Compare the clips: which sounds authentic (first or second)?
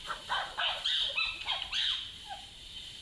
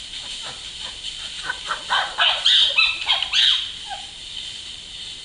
second